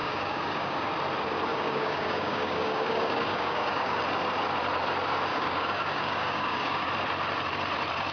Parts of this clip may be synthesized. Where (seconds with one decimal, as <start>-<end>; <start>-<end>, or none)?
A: 0.0-0.9; 1.5-4.0; 5.3-6.9